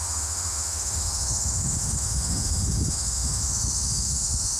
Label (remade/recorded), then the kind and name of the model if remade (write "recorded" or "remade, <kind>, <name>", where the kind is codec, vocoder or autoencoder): remade, autoencoder, DAC-VAE